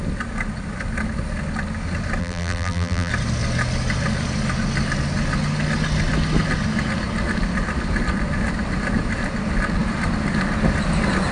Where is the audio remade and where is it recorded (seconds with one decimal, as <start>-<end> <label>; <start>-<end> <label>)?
0.0-2.2 recorded; 2.2-3.1 remade; 3.1-11.3 recorded